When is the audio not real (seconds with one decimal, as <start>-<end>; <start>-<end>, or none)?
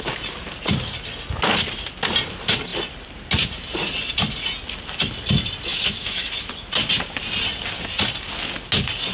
5.7-6.5